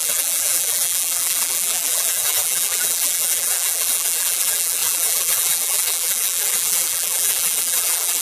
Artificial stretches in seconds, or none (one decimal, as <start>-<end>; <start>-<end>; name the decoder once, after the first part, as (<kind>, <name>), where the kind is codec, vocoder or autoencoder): 0.0-8.2 (vocoder, BigVGAN v2)